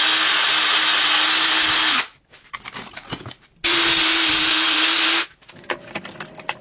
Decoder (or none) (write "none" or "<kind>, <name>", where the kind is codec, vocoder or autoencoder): none